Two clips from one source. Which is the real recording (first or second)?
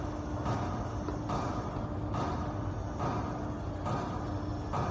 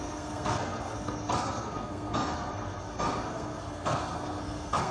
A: first